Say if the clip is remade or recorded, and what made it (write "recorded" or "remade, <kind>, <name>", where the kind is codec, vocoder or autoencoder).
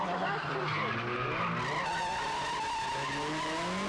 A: recorded